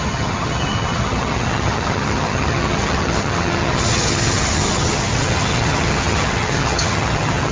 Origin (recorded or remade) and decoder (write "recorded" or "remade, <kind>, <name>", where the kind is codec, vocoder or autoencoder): remade, vocoder, HiFi-GAN